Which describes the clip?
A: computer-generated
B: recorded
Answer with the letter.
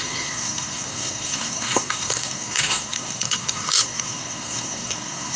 A